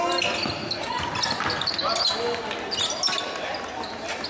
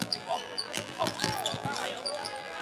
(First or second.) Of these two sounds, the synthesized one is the second